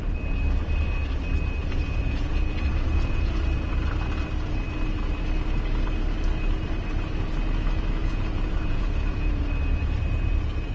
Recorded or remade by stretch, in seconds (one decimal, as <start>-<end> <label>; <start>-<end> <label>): 0.0-1.6 recorded; 1.6-3.4 remade; 3.4-8.0 recorded; 8.0-9.4 remade; 9.4-10.7 recorded